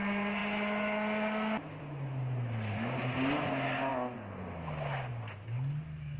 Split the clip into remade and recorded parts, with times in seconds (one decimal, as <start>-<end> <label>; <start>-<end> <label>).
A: 0.0-6.2 recorded